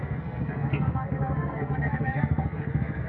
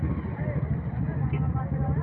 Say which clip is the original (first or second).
second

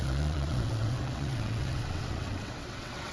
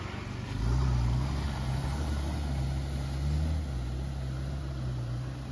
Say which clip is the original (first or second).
second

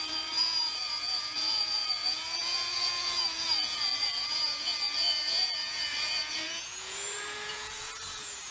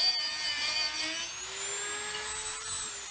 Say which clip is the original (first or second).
second